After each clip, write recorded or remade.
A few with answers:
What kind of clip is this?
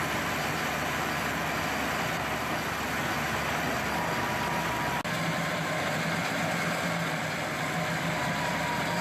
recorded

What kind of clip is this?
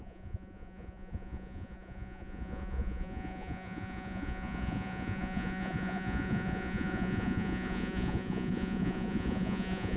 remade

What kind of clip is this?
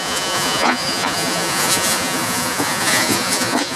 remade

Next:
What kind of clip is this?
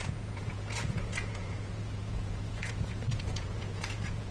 remade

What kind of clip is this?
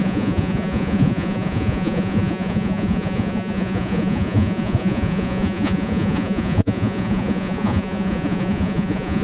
remade